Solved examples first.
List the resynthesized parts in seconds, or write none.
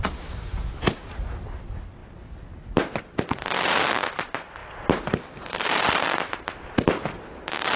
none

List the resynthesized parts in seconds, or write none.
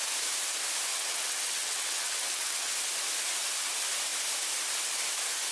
0.9-2.7 (vocoder, WaveNeXt)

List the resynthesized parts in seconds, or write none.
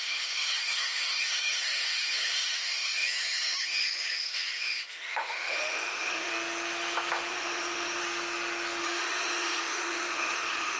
0.0-6.3 (autoencoder, DAC-VAE); 7.3-8.0; 8.8-10.8